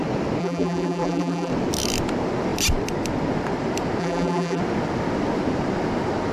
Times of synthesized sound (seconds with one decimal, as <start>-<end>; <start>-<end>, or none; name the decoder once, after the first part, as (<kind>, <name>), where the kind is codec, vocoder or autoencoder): 0.4-1.5 (vocoder, BigVGAN v2); 4.0-4.6